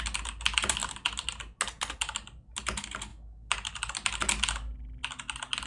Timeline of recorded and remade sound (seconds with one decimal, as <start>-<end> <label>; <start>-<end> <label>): 0.0-5.7 recorded